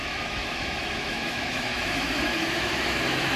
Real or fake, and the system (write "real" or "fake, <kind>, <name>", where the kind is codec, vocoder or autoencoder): fake, autoencoder, DAC-VAE